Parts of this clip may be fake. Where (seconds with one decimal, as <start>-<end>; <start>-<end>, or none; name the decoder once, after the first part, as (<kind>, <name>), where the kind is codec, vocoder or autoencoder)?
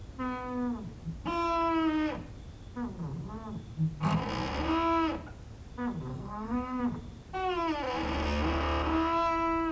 6.1-6.8 (codec, SNAC)